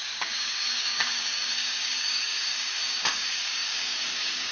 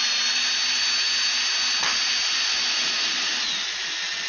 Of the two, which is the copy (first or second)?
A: first